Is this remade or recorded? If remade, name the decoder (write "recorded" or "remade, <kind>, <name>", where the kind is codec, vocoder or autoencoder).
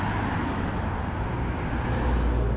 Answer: recorded